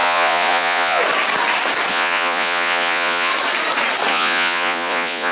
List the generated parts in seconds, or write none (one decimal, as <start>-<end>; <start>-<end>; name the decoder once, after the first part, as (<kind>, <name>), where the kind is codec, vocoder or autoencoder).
0.0-1.0 (vocoder, Vocos); 1.9-3.3; 4.1-5.3